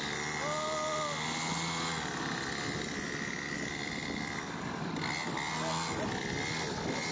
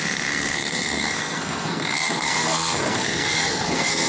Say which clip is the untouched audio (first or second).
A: first